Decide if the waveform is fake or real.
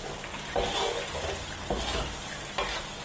real